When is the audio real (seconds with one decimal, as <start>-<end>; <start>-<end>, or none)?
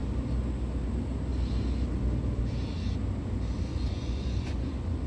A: 0.0-3.7